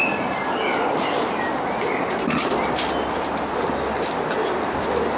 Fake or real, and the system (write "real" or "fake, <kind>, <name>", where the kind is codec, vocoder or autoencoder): real